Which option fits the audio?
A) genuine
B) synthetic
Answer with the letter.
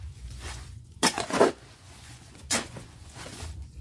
B